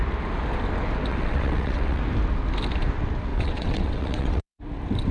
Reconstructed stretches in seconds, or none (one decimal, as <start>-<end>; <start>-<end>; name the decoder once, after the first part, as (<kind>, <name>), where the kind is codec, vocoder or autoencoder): 1.1-2.0 (vocoder, WaveNeXt); 3.3-4.6